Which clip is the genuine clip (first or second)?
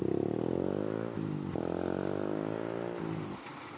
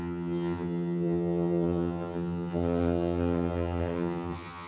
first